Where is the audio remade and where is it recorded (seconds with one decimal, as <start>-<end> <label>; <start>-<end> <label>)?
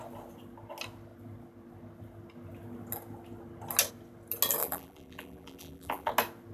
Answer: 0.0-4.6 recorded; 4.6-6.1 remade; 6.1-6.5 recorded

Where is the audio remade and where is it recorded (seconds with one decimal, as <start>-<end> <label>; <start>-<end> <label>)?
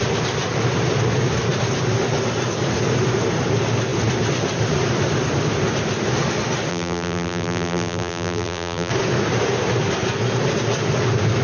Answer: 0.0-6.7 recorded; 6.7-8.9 remade; 8.9-11.4 recorded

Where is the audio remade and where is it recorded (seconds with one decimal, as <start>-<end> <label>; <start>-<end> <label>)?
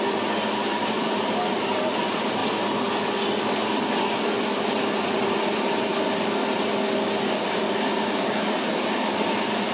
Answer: 0.0-9.7 recorded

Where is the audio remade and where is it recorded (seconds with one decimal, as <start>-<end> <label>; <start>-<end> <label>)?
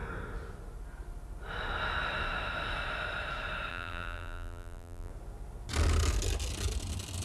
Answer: 0.0-3.7 recorded; 3.7-5.1 remade; 5.1-7.2 recorded